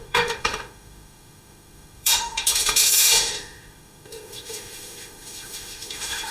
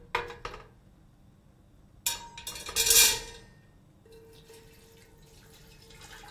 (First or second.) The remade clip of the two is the first